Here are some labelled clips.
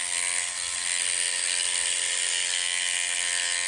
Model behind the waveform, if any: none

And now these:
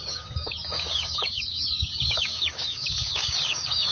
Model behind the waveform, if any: codec, DAC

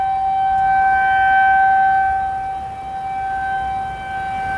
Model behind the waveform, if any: none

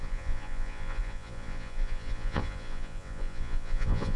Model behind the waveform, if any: vocoder, Vocos